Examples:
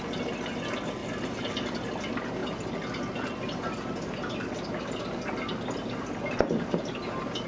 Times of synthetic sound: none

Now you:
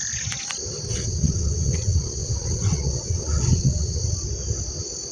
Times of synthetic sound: 0.9-4.0 (vocoder, WaveNeXt)

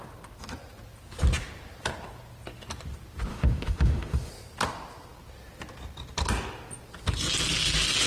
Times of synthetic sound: 3.3-4.3 (autoencoder, DAC-VAE)

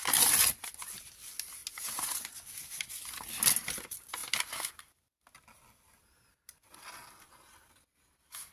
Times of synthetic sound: none

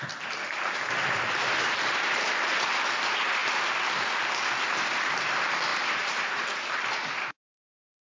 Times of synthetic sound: 0.4-2.3 (vocoder, BigVGAN v2); 5.7-6.4